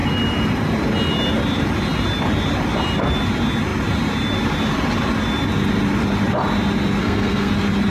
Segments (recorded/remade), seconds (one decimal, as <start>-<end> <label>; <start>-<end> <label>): 0.0-7.0 recorded; 7.0-7.5 remade; 7.5-7.9 recorded